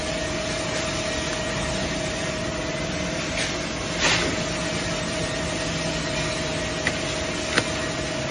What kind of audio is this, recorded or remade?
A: recorded